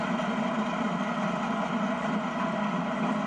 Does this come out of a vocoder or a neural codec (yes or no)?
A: no